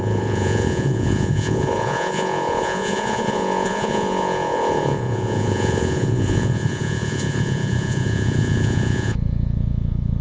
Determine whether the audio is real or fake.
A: fake